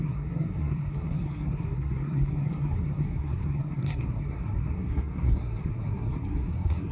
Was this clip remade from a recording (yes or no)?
yes